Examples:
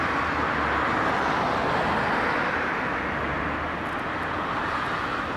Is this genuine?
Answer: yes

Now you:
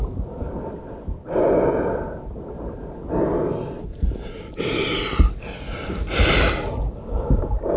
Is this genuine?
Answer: yes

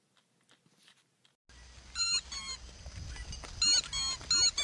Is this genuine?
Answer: yes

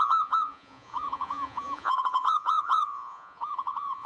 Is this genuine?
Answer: no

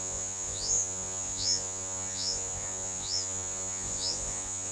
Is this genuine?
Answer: no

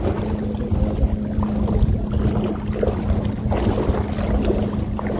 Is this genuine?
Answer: yes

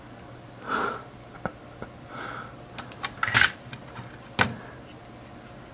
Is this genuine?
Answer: yes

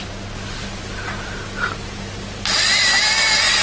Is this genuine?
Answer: yes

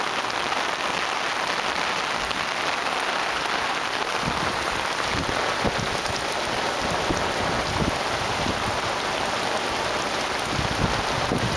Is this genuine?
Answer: yes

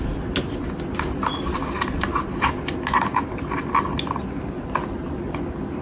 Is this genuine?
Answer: yes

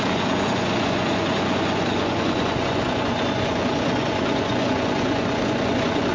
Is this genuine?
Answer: no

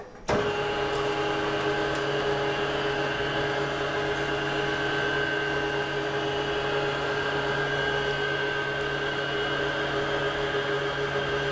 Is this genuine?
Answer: yes